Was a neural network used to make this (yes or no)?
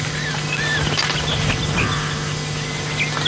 no